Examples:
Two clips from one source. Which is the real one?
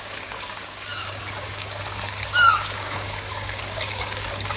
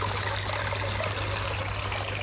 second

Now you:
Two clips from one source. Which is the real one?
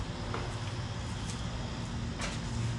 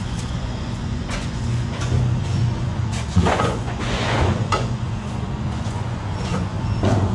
first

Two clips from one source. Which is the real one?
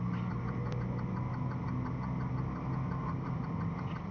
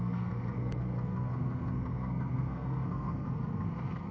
first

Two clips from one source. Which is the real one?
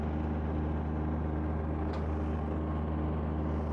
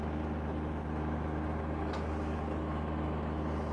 first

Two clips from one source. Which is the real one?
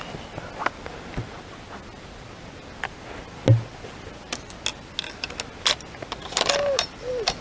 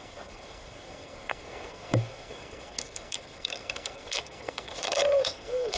first